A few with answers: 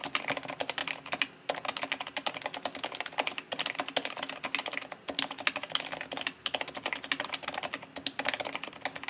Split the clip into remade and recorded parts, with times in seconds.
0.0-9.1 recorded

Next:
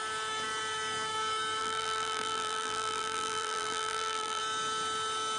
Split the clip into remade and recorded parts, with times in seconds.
0.0-1.6 recorded; 1.6-4.4 remade; 4.4-5.4 recorded

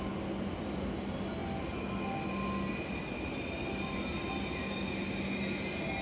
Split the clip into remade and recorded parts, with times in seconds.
0.0-6.0 recorded

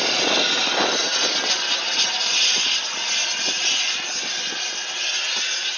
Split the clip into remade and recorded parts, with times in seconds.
0.0-5.8 recorded